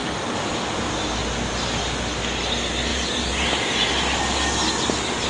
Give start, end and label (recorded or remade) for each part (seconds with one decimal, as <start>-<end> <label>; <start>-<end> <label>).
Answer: 0.0-2.9 recorded; 2.9-3.9 remade; 3.9-5.3 recorded

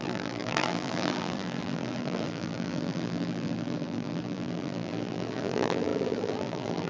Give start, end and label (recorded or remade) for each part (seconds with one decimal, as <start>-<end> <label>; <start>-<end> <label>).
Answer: 0.0-6.9 remade

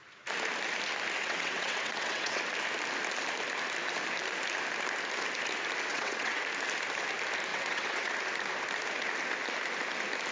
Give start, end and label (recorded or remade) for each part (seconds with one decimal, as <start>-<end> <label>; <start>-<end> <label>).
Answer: 0.0-1.2 recorded; 1.2-2.4 remade; 2.4-5.9 recorded; 5.9-6.4 remade; 6.4-7.5 recorded; 7.5-8.1 remade; 8.1-10.3 recorded